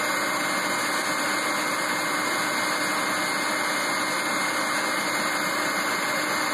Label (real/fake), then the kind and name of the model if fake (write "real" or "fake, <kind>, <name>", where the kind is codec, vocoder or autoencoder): real